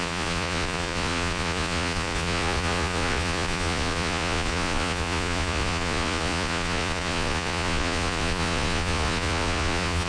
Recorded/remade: remade